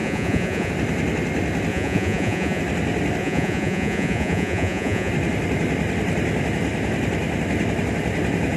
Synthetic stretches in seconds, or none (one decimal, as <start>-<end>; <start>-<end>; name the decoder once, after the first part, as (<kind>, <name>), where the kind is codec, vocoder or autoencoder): 0.0-0.7 (vocoder, Vocos); 1.7-2.6; 3.2-5.1